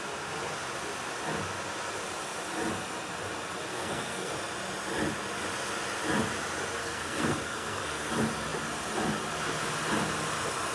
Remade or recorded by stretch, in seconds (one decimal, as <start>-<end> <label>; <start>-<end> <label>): 0.0-3.7 recorded; 3.7-4.3 remade; 4.3-6.8 recorded; 6.8-8.1 remade; 8.1-10.7 recorded